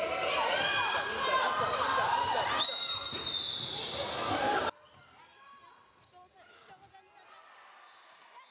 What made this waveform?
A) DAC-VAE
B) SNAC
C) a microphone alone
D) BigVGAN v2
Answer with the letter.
C